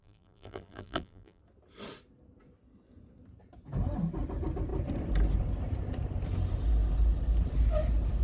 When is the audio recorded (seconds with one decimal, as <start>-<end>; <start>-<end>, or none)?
1.4-8.2